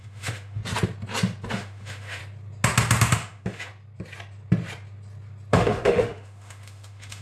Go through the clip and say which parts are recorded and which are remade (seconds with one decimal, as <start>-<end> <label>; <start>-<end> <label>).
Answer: 0.0-0.6 remade; 0.6-1.5 recorded; 1.5-2.2 remade; 2.2-3.0 recorded; 3.0-3.7 remade; 3.7-5.5 recorded; 5.5-7.2 remade